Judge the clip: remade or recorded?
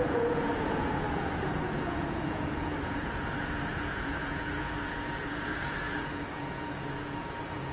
remade